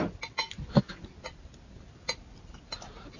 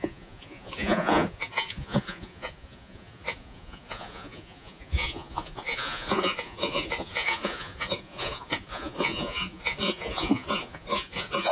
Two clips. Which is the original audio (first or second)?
first